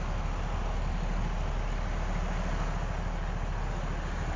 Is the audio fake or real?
real